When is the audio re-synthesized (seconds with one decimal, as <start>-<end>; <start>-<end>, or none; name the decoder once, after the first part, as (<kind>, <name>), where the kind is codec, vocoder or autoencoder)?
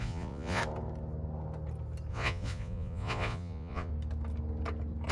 0.0-0.6 (vocoder, Vocos); 2.1-3.9